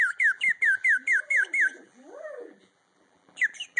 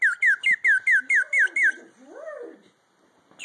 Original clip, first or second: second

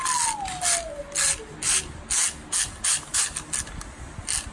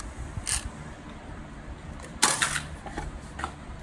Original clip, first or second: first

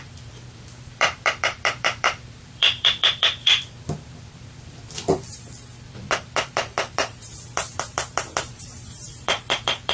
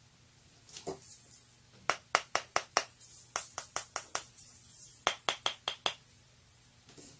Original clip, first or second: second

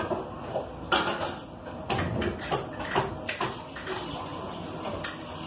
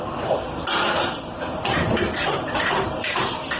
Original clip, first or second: first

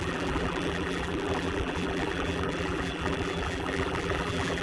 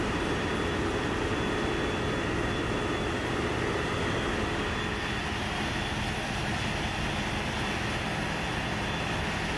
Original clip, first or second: second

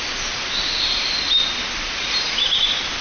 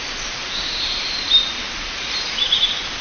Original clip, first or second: first